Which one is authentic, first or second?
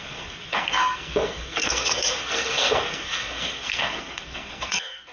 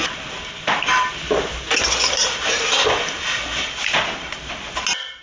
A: second